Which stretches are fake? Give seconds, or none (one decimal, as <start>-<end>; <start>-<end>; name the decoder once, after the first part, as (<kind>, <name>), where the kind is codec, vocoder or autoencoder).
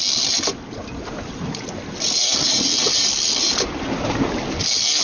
0.8-3.8 (vocoder, BigVGAN v2)